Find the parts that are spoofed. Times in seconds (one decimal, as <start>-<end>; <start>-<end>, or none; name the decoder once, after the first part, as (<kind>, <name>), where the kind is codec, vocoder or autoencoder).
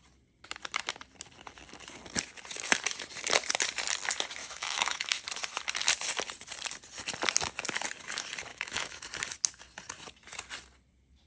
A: 4.4-5.2 (autoencoder, DAC-VAE); 8.5-9.1